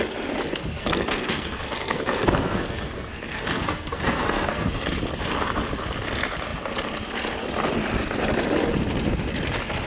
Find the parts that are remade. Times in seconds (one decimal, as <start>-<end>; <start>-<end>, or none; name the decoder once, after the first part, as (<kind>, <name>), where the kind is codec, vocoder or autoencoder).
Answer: 0.6-4.7 (codec, SNAC)